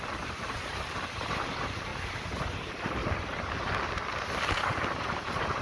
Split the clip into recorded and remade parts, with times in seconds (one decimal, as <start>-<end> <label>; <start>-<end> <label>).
0.0-1.9 remade; 1.9-2.5 recorded; 2.5-3.0 remade; 3.0-4.5 recorded; 4.5-5.6 remade